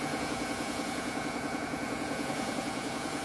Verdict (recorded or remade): remade